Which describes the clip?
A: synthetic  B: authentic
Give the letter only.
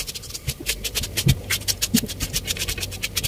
B